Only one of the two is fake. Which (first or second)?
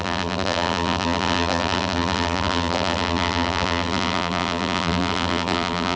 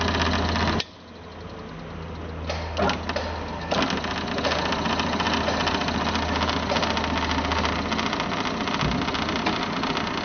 first